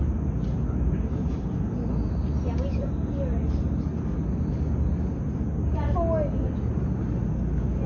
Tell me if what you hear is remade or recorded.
recorded